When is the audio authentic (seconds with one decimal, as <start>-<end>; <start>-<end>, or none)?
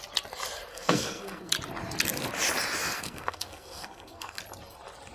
0.0-0.7; 1.5-2.8; 4.4-5.1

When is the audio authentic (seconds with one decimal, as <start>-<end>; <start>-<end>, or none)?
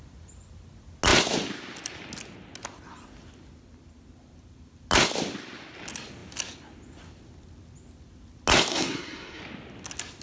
0.0-8.7; 9.4-10.2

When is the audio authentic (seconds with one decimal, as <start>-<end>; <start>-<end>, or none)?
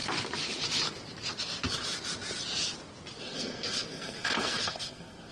0.0-3.2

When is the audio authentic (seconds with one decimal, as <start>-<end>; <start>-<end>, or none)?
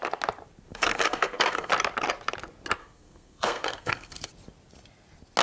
0.0-0.7; 1.7-2.8; 4.3-5.4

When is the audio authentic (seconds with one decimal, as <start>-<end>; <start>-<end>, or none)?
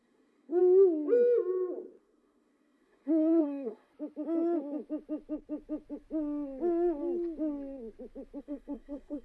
0.6-2.0; 3.9-8.4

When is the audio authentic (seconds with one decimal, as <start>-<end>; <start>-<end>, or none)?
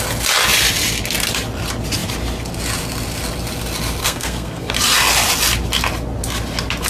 0.0-4.0; 4.7-6.9